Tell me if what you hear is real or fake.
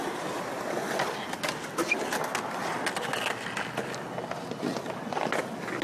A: real